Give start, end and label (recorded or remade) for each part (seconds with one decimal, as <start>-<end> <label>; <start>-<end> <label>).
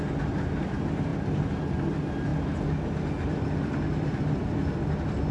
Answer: 0.0-5.3 recorded